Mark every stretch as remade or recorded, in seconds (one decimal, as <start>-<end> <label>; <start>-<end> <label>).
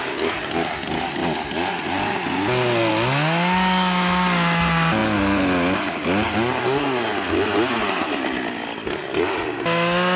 0.0-10.2 recorded